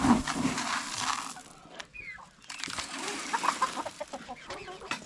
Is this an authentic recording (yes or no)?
yes